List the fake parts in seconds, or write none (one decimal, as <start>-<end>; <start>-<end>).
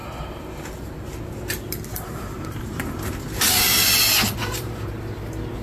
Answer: 0.0-1.2; 1.9-3.1; 4.4-5.0